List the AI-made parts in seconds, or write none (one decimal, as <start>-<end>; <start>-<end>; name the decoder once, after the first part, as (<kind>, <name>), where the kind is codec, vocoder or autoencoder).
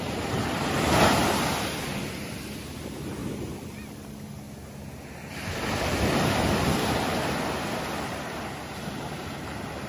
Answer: none